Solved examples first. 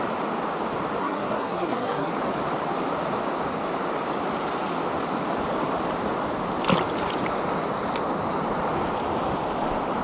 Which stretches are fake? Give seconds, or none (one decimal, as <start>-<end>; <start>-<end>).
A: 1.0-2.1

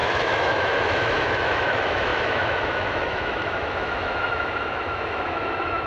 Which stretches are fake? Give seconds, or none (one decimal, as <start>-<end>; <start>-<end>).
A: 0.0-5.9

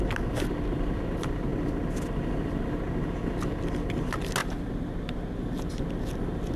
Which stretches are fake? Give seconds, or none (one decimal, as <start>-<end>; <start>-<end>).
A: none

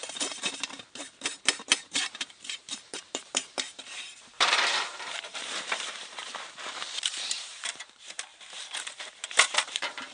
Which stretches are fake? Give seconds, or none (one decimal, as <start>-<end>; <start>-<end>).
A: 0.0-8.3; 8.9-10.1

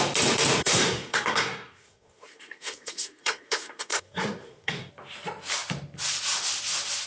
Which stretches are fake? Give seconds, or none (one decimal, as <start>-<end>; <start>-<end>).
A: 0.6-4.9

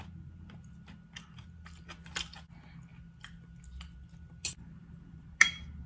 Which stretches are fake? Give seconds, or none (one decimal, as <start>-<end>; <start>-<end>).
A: none